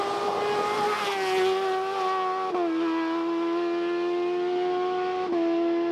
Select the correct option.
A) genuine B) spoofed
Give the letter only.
A